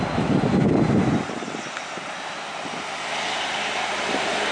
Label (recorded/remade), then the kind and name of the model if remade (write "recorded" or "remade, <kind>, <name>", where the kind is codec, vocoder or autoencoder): recorded